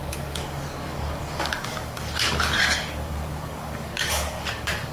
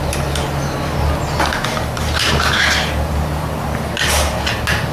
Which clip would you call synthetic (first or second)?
first